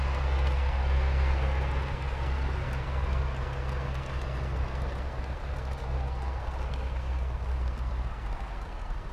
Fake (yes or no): yes